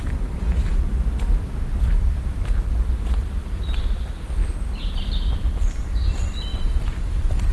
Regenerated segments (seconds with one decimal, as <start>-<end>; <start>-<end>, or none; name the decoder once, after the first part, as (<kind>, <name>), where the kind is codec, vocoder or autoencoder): 0.0-4.4 (vocoder, BigVGAN v2); 6.1-6.5; 7.1-7.5